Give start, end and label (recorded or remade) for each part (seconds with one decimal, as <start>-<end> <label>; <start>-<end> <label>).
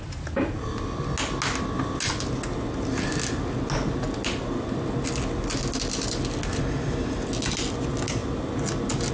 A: 0.0-9.1 recorded